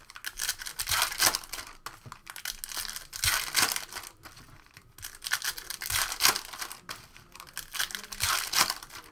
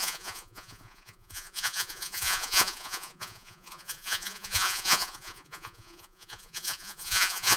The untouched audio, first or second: first